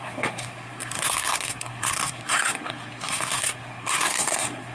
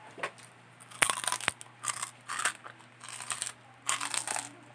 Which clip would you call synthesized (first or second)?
first